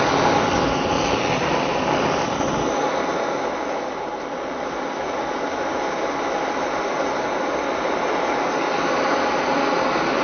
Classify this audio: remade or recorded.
recorded